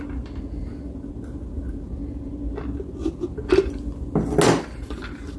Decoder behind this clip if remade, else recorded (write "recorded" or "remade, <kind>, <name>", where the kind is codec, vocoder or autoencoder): recorded